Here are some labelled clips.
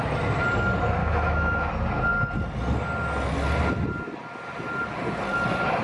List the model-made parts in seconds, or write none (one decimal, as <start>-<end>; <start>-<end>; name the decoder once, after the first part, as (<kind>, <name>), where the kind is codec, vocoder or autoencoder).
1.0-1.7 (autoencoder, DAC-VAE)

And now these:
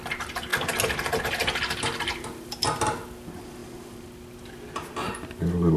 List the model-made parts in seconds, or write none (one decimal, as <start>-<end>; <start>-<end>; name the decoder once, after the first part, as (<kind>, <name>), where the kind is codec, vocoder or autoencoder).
none

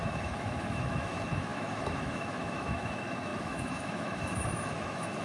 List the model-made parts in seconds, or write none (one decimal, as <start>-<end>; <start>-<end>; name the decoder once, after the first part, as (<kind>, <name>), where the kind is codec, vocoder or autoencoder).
0.0-5.2 (autoencoder, DAC-VAE)

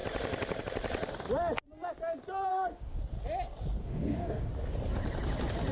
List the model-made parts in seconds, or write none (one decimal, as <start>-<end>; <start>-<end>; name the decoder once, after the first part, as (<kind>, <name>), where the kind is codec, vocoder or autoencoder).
2.5-3.0 (autoencoder, DAC-VAE); 3.8-4.5

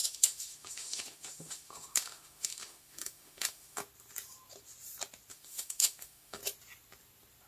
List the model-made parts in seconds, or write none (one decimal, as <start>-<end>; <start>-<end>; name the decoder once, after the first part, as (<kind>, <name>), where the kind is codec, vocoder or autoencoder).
0.0-3.8 (autoencoder, DAC-VAE); 5.3-6.4